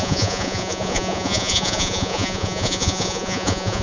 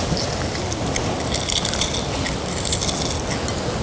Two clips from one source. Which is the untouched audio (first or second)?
second